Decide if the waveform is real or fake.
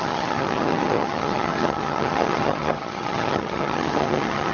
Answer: fake